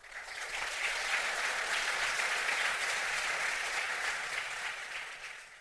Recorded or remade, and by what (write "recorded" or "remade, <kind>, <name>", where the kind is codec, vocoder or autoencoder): remade, vocoder, Vocos